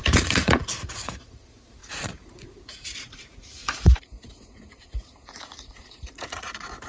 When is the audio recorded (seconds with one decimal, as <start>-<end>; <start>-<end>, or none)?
none